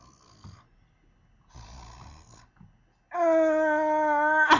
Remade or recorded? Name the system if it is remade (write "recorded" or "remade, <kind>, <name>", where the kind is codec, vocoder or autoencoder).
recorded